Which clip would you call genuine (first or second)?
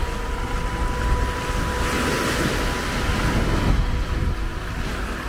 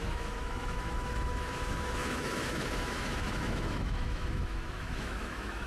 first